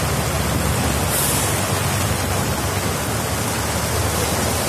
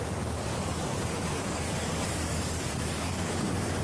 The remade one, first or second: second